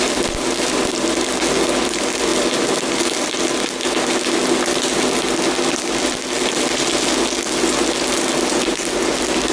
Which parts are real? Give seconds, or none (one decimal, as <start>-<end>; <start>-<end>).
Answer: 0.0-2.3; 3.0-9.5